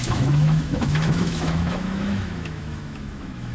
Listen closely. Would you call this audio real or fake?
fake